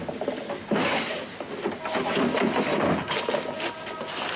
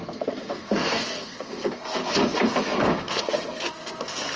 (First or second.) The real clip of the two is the first